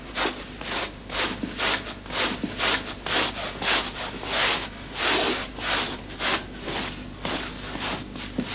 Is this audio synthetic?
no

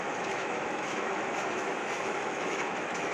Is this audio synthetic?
yes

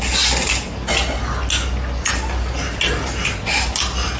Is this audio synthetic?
no